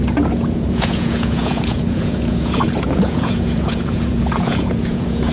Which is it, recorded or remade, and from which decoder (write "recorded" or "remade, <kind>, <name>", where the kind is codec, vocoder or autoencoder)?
remade, vocoder, Vocos